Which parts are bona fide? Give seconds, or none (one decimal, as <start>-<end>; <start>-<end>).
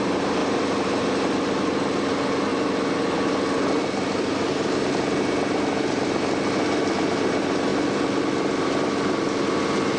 0.0-10.0